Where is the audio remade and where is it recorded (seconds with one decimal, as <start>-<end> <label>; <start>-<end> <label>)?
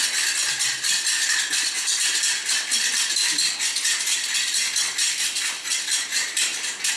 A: 0.0-7.0 recorded